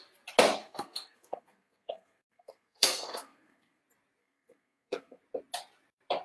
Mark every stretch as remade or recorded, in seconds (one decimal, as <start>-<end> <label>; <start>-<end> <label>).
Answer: 0.0-0.6 recorded; 0.6-3.8 remade; 3.8-4.2 recorded; 4.2-5.2 remade; 5.2-6.2 recorded